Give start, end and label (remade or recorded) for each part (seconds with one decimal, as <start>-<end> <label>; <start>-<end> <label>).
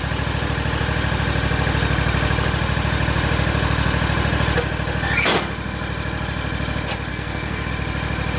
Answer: 0.0-7.1 recorded; 7.1-7.7 remade; 7.7-8.4 recorded